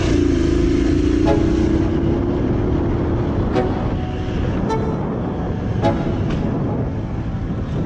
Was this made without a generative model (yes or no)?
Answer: yes